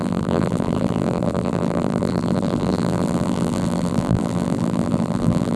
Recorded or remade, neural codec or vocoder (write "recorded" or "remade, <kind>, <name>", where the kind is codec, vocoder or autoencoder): remade, vocoder, BigVGAN v2